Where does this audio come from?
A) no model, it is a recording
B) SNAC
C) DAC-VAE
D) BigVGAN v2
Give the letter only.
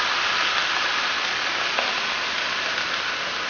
A